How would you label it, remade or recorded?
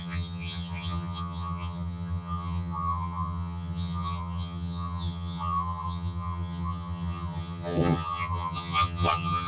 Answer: remade